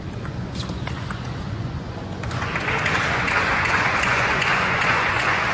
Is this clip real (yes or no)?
no